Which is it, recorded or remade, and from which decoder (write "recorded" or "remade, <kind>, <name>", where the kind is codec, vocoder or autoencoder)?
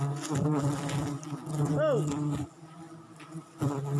recorded